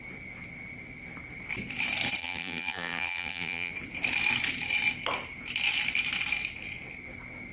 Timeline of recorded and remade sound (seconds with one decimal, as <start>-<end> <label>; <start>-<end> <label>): 0.0-2.2 recorded; 2.2-3.7 remade; 3.7-7.5 recorded